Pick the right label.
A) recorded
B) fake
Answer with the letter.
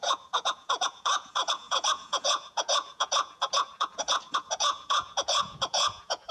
B